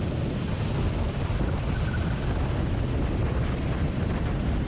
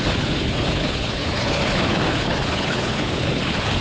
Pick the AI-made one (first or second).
second